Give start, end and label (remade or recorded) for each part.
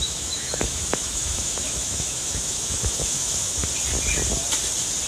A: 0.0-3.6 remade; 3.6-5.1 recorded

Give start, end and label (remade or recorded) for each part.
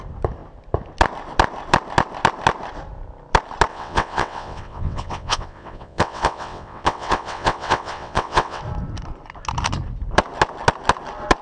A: 0.0-3.7 recorded; 3.7-8.6 remade; 8.6-11.4 recorded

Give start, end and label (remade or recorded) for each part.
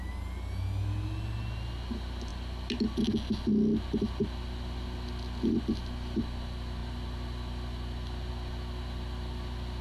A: 0.0-9.8 recorded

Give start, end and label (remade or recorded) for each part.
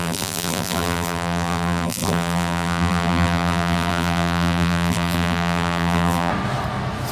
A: 0.0-6.3 remade; 6.3-7.1 recorded